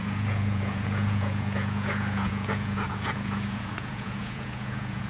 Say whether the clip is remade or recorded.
remade